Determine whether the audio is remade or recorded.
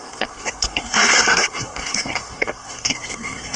remade